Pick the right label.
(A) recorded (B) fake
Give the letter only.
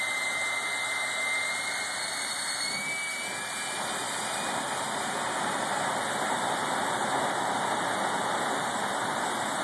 A